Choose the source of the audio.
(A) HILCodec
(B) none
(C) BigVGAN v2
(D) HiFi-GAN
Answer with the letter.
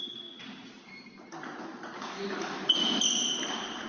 B